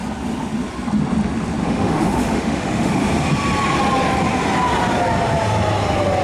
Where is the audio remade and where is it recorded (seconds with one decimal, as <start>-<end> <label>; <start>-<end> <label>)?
0.0-1.6 recorded; 1.6-2.9 remade; 2.9-6.2 recorded